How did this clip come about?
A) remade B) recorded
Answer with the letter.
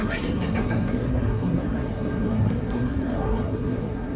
A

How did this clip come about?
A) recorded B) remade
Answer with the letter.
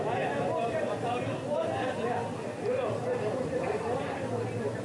A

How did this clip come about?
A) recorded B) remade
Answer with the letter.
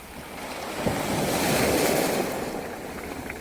A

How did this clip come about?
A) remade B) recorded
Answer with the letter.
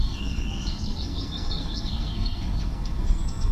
A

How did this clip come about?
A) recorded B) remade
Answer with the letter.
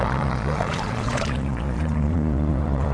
B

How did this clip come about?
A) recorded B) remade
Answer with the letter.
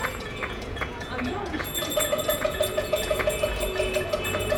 B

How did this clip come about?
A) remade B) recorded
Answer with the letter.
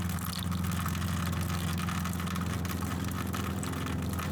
B